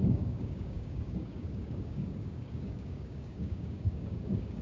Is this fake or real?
fake